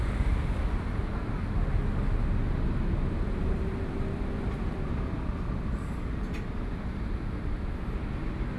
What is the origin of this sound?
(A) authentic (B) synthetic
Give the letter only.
A